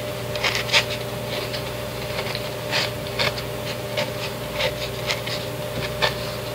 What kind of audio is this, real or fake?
real